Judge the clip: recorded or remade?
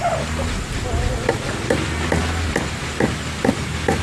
recorded